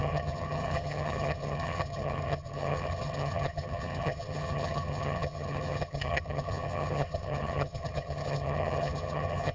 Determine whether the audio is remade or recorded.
remade